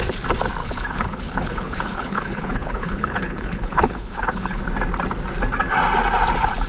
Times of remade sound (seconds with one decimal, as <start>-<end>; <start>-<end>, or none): 0.6-4.6